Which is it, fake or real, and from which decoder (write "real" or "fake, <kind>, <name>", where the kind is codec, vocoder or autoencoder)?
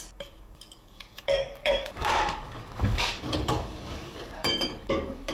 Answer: fake, codec, DAC